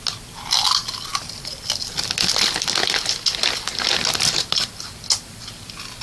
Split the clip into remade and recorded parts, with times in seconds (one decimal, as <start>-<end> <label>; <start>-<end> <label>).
0.0-6.0 recorded